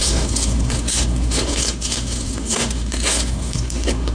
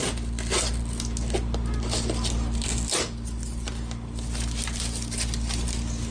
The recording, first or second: second